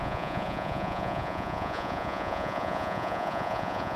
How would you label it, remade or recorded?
remade